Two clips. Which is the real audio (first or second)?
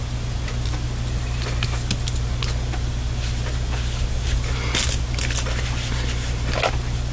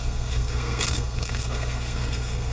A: first